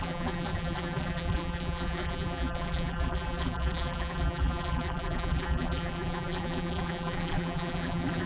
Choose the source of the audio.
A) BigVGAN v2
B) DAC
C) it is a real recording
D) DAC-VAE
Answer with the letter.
A